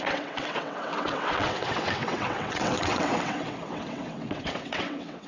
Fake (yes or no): yes